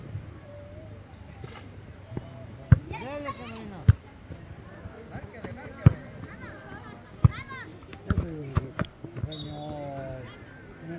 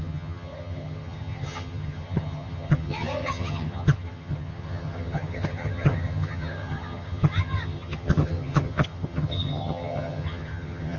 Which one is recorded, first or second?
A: first